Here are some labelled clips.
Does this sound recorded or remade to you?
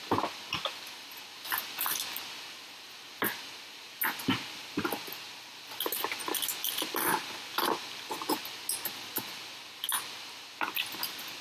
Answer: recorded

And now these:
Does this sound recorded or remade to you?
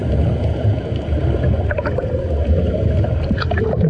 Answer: recorded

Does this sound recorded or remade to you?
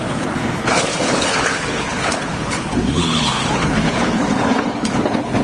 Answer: remade